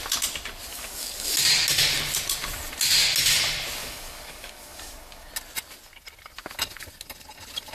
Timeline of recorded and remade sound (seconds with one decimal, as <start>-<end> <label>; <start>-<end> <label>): 0.0-0.7 recorded; 0.7-1.4 remade; 1.4-3.8 recorded; 3.8-5.3 remade; 5.3-7.7 recorded